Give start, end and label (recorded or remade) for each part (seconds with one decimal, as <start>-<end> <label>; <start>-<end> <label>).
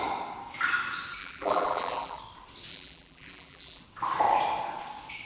0.0-1.2 recorded; 1.2-2.2 remade; 2.2-2.7 recorded; 2.7-3.8 remade; 3.8-5.2 recorded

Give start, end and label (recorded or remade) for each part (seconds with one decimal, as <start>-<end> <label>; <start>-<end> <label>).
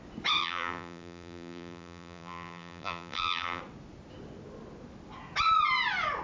0.0-0.4 recorded; 0.4-3.6 remade; 3.6-6.2 recorded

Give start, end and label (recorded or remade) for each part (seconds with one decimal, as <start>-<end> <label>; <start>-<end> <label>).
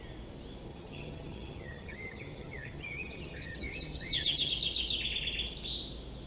0.0-0.7 recorded; 0.7-4.5 remade; 4.5-6.3 recorded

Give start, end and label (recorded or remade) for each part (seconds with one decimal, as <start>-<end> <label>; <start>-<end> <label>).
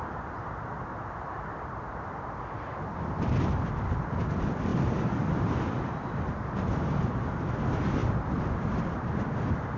0.0-9.8 remade